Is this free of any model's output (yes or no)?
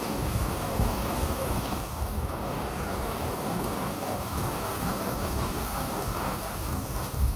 no